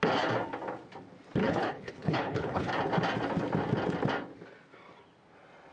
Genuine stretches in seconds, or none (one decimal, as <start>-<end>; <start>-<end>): 0.0-1.4; 2.7-5.7